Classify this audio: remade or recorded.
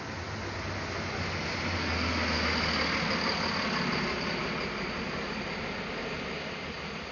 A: recorded